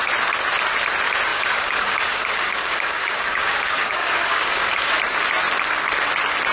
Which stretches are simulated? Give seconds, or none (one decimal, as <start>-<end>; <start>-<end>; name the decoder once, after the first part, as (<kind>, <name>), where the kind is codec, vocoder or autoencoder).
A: 1.3-4.9 (codec, DAC)